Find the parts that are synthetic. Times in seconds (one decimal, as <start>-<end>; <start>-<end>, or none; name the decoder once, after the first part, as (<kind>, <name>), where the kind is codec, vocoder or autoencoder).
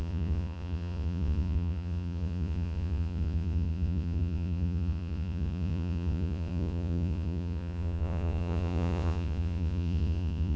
0.0-10.6 (vocoder, Vocos)